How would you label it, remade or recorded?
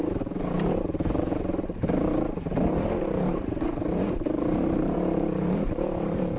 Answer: remade